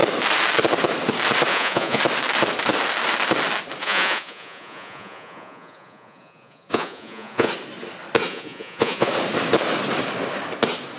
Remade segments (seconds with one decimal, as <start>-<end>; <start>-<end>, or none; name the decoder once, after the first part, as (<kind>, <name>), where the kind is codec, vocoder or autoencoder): 1.5-2.0 (vocoder, Vocos); 3.8-7.5; 8.3-9.1